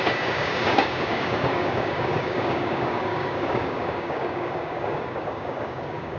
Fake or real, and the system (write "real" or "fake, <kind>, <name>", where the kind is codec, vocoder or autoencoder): fake, codec, DAC